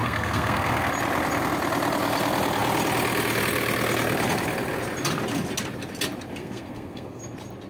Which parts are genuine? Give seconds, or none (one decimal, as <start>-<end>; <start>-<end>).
0.9-6.4; 7.2-7.7